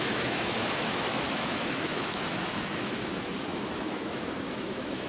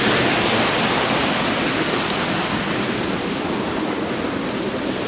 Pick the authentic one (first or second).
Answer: second